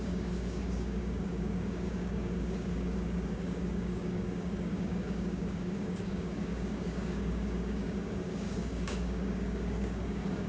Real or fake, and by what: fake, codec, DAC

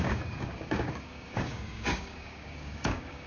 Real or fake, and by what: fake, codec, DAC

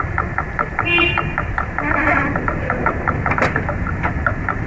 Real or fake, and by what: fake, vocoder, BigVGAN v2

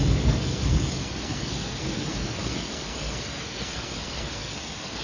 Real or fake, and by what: fake, codec, SNAC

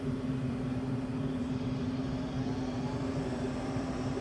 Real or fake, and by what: fake, vocoder, BigVGAN v2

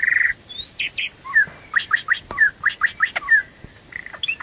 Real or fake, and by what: real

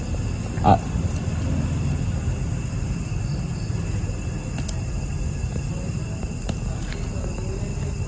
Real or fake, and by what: real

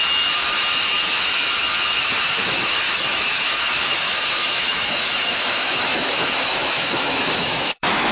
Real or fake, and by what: fake, autoencoder, DAC-VAE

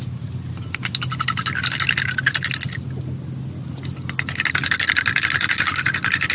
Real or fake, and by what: real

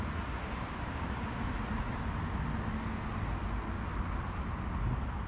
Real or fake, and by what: real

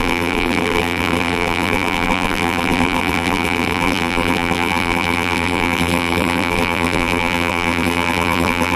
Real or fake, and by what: fake, vocoder, BigVGAN v2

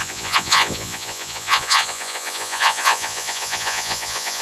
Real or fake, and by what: fake, vocoder, Vocos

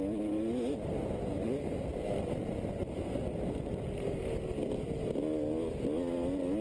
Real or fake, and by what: real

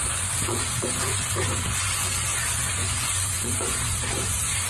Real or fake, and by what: fake, vocoder, Vocos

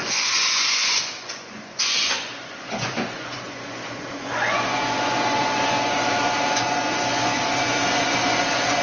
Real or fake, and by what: fake, vocoder, Vocos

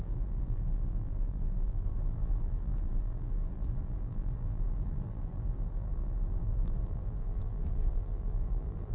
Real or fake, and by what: fake, vocoder, BigVGAN v2